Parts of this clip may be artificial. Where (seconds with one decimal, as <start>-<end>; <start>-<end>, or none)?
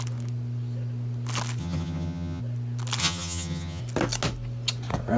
1.6-2.4; 3.0-3.8